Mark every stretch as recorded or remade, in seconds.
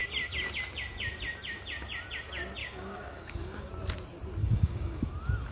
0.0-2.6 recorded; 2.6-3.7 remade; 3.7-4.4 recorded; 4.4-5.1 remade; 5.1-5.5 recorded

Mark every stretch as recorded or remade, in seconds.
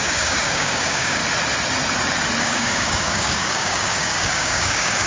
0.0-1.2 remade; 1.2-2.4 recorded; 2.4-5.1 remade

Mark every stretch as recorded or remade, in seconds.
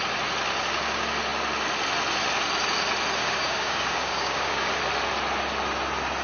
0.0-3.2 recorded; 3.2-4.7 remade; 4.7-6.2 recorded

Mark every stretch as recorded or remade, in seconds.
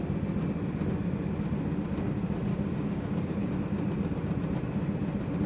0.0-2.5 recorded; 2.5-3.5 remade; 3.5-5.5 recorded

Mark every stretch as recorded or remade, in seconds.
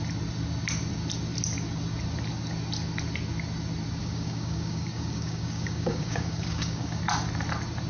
0.0-4.0 recorded; 4.0-7.0 remade; 7.0-7.9 recorded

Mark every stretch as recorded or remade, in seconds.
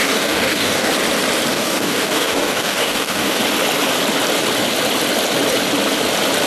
0.0-0.9 remade; 0.9-1.5 recorded; 1.5-3.4 remade; 3.4-6.5 recorded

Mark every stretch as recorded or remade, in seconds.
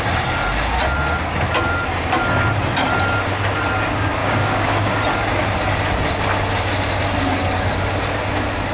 0.0-4.2 recorded; 4.2-4.9 remade; 4.9-8.7 recorded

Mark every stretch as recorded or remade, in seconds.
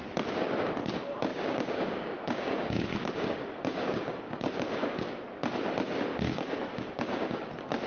0.0-1.3 recorded; 1.3-5.2 remade; 5.2-6.1 recorded; 6.1-7.5 remade; 7.5-7.9 recorded